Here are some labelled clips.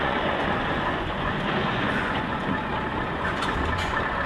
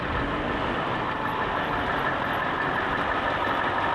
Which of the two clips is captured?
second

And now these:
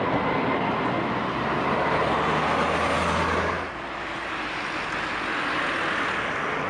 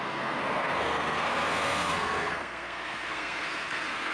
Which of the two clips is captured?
first